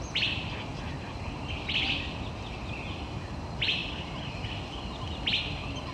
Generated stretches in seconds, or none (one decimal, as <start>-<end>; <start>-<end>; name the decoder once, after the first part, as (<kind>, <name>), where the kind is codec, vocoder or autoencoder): none